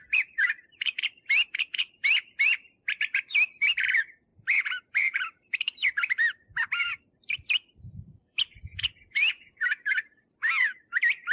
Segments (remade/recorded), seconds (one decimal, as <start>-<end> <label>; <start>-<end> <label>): 0.0-11.3 remade

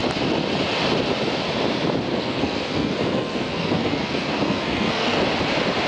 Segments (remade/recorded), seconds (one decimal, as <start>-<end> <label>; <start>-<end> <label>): 0.0-2.1 recorded; 2.1-5.2 remade; 5.2-5.9 recorded

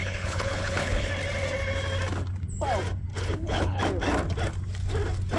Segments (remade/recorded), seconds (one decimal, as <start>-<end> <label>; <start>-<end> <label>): 0.0-1.1 remade; 1.1-3.1 recorded; 3.1-3.8 remade; 3.8-5.4 recorded

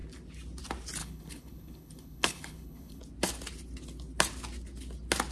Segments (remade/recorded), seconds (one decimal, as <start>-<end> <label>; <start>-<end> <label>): 0.0-1.0 recorded; 1.0-3.0 remade; 3.0-5.3 recorded

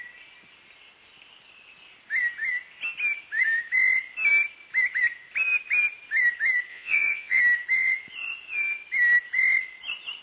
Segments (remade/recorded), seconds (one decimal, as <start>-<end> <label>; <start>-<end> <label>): 0.0-6.7 recorded; 6.7-7.4 remade; 7.4-10.2 recorded

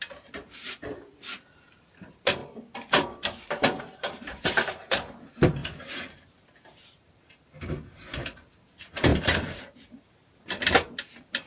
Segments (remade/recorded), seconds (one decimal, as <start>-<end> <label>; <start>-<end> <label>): 0.0-2.4 remade; 2.4-3.8 recorded; 3.8-11.5 remade

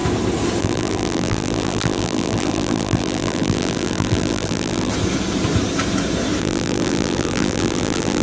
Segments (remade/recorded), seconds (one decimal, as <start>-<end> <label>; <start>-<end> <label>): 0.0-0.6 recorded; 0.6-4.9 remade; 4.9-6.4 recorded; 6.4-8.2 remade